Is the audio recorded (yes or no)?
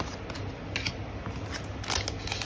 yes